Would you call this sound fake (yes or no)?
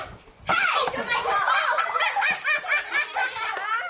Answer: no